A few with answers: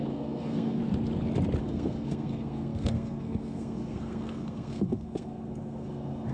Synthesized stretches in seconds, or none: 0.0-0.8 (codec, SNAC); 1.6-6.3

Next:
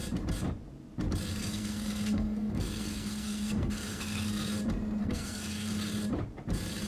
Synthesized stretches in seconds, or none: 1.4-4.5 (codec, SNAC); 5.0-5.7

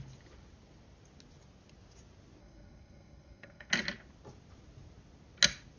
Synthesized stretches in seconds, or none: 2.4-3.7 (codec, SNAC)

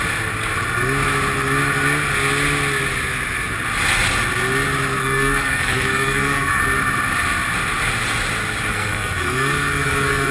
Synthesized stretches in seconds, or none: 5.0-6.6 (codec, SNAC); 8.7-10.3

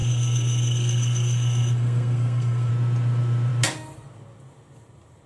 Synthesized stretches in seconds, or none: 0.0-2.7 (codec, SNAC)